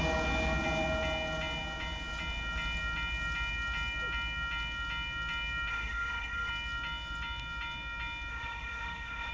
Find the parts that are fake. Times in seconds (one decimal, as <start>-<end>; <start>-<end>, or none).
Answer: 5.7-6.5; 8.3-9.3